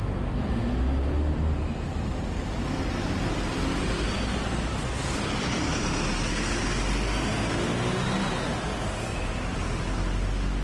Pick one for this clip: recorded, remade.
recorded